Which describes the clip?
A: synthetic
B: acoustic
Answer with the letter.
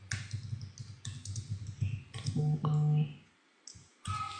B